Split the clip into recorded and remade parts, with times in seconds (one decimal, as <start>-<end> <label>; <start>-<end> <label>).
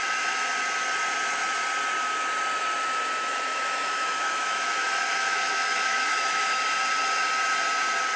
0.0-3.3 recorded; 3.3-6.6 remade; 6.6-8.2 recorded